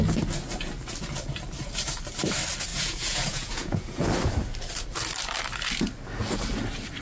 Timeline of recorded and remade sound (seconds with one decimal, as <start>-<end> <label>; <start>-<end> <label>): 0.0-2.7 recorded; 2.7-4.0 remade; 4.0-7.0 recorded